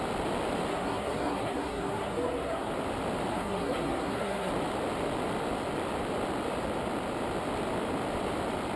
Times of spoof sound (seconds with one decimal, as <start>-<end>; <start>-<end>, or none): 0.7-2.7; 3.3-4.5